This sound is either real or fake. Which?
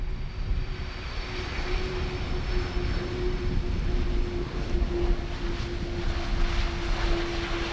real